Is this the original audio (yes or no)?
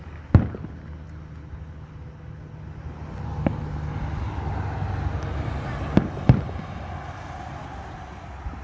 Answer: yes